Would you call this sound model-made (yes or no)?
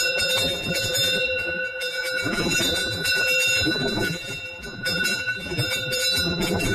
yes